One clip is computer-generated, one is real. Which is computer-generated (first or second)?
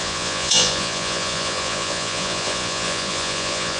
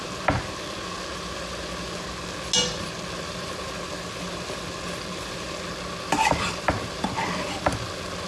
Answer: first